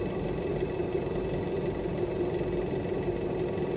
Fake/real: real